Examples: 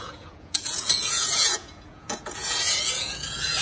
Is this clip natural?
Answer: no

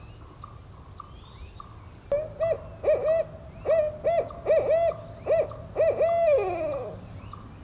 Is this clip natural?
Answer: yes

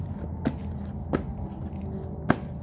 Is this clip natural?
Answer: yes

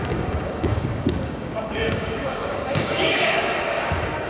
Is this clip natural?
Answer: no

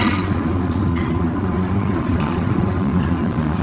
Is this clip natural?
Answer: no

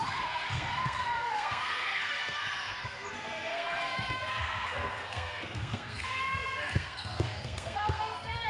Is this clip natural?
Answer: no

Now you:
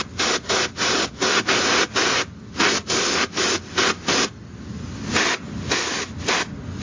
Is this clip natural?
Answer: yes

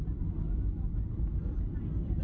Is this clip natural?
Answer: yes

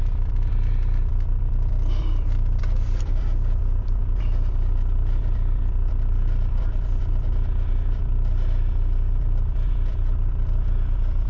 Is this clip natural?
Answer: no